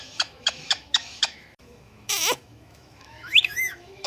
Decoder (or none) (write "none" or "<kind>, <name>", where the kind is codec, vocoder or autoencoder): autoencoder, DAC-VAE